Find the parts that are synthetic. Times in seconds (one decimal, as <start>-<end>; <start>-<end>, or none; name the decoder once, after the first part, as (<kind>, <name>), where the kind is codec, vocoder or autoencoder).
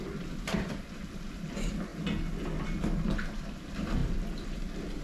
0.0-1.9 (vocoder, BigVGAN v2); 2.8-5.0